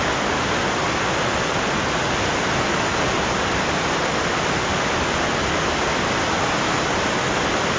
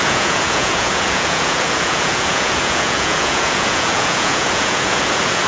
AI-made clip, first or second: second